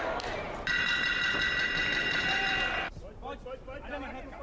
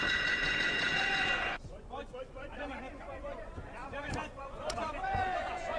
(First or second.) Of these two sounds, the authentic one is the first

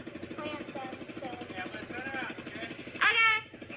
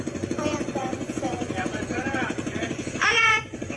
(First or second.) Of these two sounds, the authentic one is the first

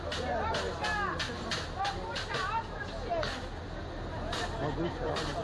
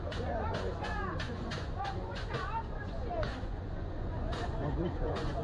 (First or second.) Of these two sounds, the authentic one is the first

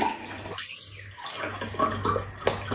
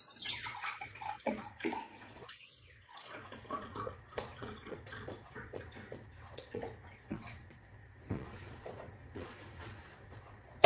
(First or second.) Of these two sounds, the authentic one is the first